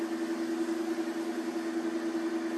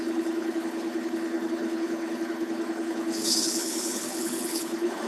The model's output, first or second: second